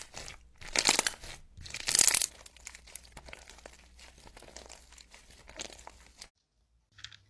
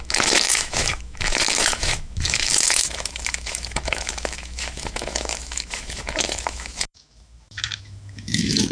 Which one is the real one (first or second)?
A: first